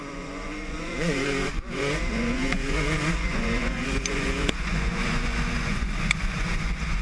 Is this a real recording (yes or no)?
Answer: no